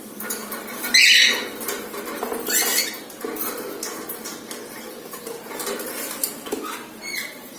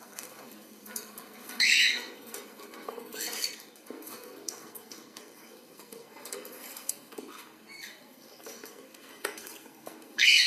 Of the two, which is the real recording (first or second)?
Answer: first